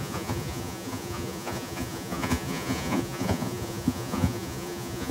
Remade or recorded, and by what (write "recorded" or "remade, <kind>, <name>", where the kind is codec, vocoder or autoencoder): remade, vocoder, Vocos